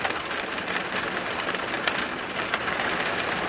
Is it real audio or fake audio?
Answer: real